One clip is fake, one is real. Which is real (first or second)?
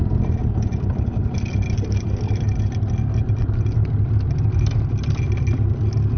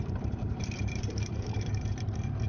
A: first